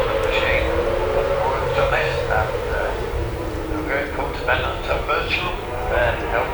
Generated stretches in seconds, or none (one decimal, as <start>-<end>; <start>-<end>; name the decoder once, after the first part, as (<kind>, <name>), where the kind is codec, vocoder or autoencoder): 1.7-2.3 (codec, DAC); 2.7-3.2; 4.7-6.1